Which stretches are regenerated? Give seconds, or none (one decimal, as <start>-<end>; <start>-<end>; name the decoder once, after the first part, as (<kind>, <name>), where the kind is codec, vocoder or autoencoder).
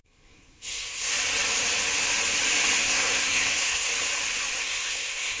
0.0-1.1 (codec, SNAC); 2.9-3.9; 4.6-5.4